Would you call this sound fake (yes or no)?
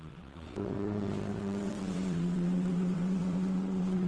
yes